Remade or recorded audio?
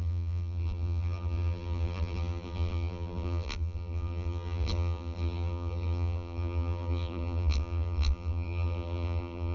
remade